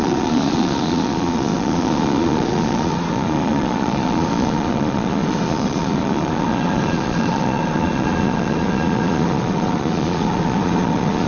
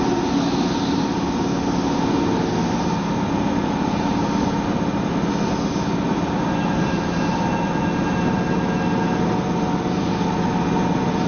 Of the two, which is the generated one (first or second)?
first